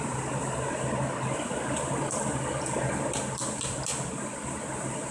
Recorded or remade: recorded